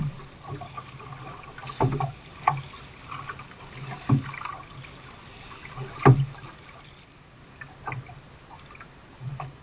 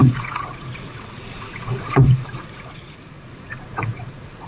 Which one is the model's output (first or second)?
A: second